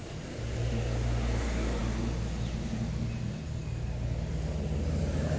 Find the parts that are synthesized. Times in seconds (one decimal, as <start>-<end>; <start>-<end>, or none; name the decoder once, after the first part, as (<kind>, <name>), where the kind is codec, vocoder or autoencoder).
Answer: none